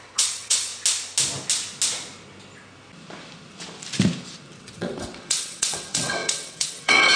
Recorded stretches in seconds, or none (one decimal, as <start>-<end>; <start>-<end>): 0.7-4.6